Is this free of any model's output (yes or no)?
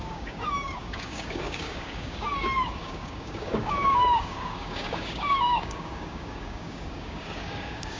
no